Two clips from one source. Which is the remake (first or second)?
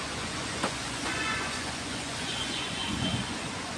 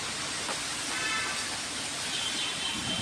first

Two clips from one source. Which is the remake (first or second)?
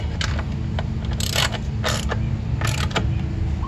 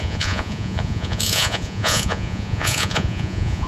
second